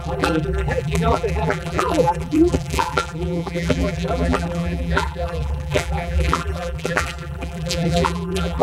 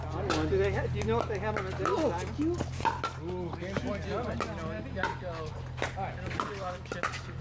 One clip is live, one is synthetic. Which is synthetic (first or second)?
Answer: first